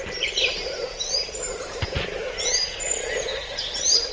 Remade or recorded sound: recorded